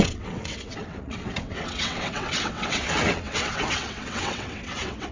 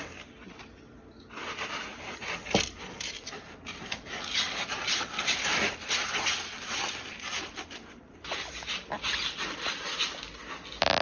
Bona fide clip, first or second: second